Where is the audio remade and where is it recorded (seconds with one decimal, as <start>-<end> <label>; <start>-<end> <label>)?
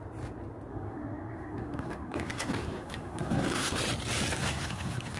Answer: 0.0-0.7 recorded; 0.7-3.8 remade; 3.8-4.4 recorded; 4.4-5.2 remade